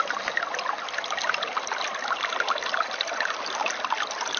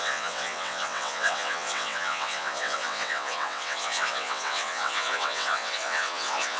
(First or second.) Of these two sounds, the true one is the first